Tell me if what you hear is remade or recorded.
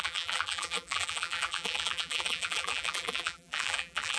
remade